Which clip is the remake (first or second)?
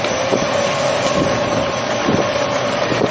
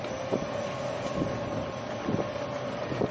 first